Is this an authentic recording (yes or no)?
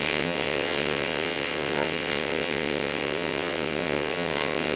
no